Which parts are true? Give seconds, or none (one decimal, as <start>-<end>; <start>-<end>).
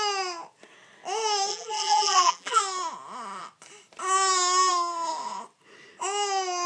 0.0-1.5; 2.6-6.7